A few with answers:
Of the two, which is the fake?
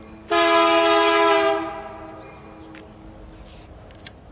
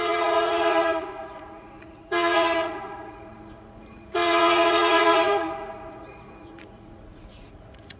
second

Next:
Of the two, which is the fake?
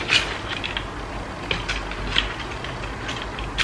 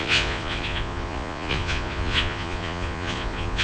second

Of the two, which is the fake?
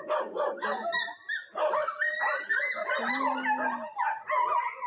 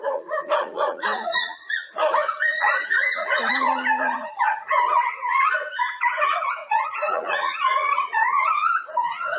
second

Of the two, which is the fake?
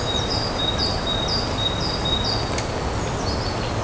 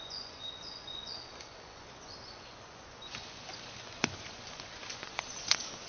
second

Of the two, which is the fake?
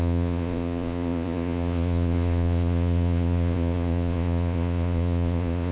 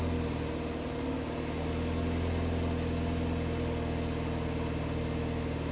first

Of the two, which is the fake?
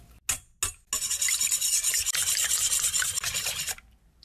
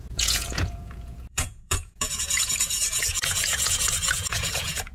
second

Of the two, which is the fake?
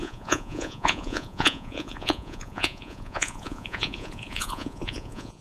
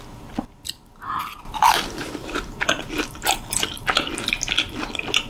first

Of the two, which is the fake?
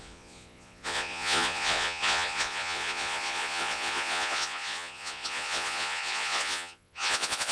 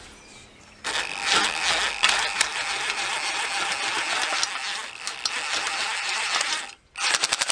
first